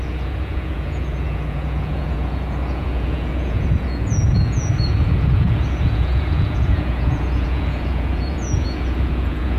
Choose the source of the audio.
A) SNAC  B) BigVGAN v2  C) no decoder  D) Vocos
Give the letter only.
D